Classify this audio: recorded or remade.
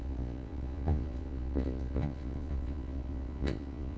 remade